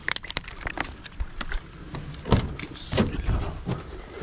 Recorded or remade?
recorded